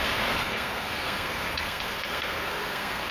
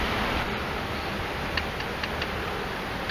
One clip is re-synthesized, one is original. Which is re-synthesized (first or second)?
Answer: first